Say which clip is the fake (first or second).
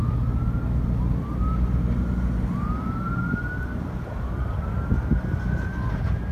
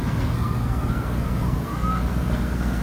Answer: second